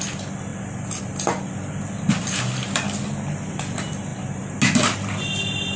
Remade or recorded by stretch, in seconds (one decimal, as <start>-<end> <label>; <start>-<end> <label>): 0.0-5.8 recorded